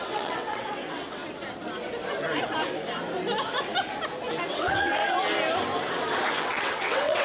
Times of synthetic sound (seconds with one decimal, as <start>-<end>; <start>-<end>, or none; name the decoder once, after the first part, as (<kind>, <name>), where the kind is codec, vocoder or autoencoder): 0.0-1.2 (vocoder, WaveNeXt); 4.5-5.0; 6.3-7.2